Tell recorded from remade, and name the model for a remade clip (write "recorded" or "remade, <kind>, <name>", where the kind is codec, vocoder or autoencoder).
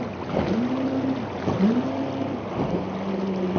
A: recorded